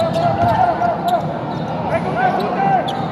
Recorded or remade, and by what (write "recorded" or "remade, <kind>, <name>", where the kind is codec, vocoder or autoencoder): recorded